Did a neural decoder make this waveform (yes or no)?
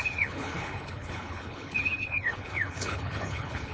yes